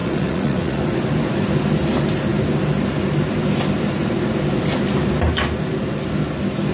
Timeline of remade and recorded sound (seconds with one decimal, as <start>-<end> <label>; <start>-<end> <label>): 0.0-0.8 remade; 0.8-6.7 recorded